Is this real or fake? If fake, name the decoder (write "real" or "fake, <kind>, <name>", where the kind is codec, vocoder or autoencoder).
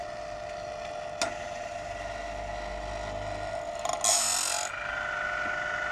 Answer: real